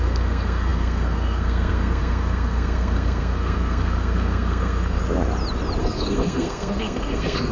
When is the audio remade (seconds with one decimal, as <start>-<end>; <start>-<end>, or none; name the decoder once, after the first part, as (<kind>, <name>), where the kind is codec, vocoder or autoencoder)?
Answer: 0.0-5.0 (codec, SNAC); 5.8-7.5